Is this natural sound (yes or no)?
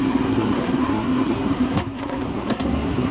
no